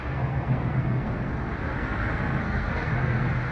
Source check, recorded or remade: remade